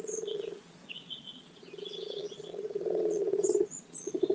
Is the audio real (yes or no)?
no